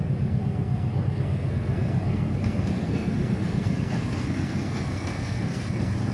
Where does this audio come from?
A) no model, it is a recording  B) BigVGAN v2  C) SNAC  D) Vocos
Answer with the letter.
C